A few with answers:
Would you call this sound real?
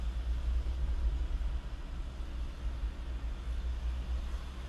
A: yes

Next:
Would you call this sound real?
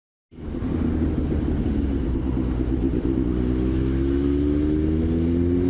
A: yes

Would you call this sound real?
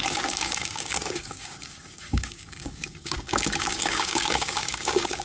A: no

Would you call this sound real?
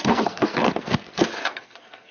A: no